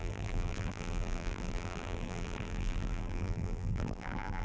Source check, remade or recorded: remade